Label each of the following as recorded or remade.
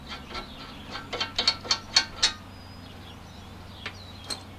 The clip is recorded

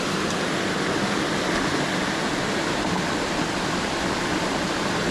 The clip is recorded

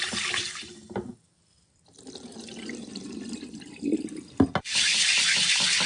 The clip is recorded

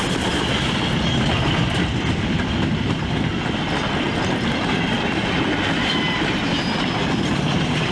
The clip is recorded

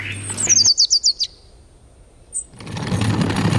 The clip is recorded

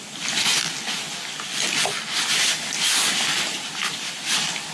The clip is remade